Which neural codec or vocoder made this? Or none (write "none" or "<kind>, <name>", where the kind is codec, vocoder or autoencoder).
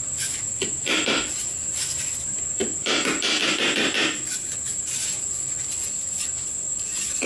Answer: none